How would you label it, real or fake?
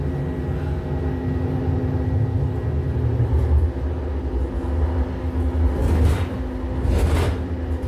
real